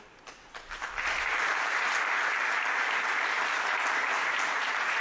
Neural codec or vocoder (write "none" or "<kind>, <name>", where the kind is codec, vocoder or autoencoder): none